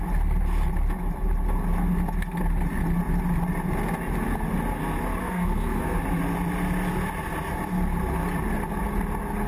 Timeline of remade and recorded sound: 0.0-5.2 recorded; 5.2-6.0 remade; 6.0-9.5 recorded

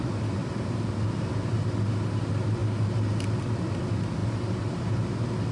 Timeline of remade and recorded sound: 0.0-5.5 recorded

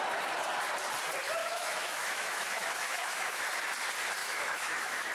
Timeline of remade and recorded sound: 0.0-1.4 recorded; 1.4-3.4 remade; 3.4-4.2 recorded; 4.2-5.1 remade

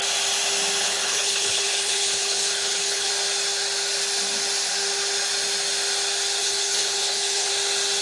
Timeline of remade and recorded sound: 0.0-0.8 recorded; 0.8-3.1 remade; 3.1-6.4 recorded; 6.4-7.5 remade; 7.5-8.0 recorded

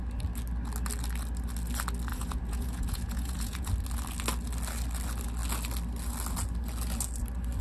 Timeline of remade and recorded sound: 0.0-2.1 recorded; 2.1-3.7 remade; 3.7-7.6 recorded

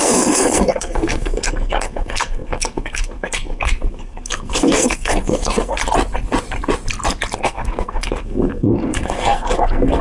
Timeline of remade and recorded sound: 0.0-5.8 remade; 5.8-7.4 recorded; 7.4-10.0 remade

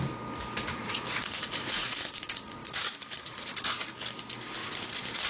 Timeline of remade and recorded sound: 0.0-0.8 recorded; 0.8-3.8 remade; 3.8-4.6 recorded; 4.6-5.3 remade

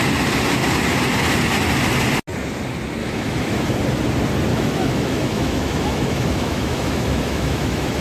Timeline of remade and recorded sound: 0.0-3.0 recorded; 3.0-3.7 remade; 3.7-4.5 recorded; 4.5-8.0 remade